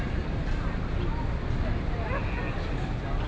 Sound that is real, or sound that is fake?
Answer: real